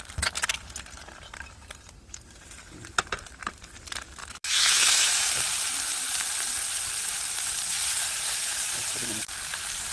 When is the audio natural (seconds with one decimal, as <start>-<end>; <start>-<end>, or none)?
0.0-4.2; 5.1-9.9